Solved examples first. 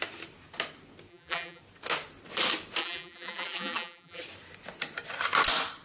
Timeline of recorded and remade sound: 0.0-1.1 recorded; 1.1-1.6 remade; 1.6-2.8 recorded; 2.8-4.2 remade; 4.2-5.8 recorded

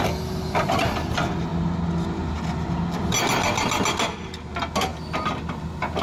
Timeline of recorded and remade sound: 0.0-6.0 recorded